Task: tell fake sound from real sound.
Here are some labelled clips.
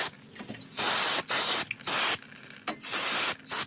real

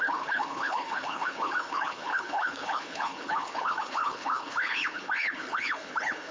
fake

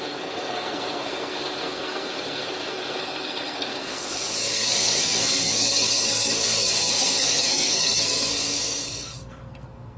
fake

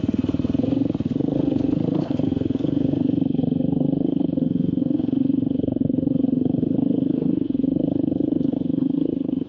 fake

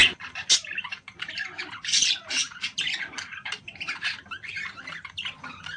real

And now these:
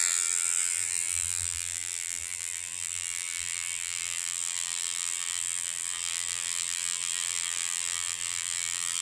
fake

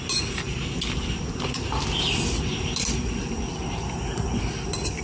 real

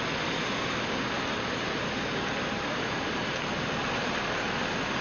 real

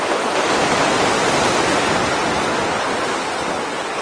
real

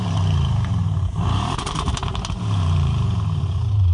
fake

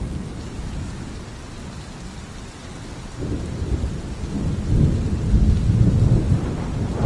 real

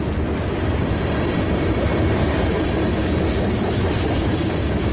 real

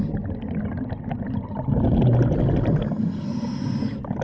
real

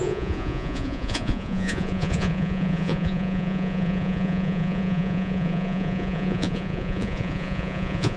fake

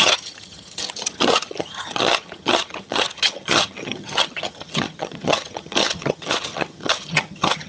fake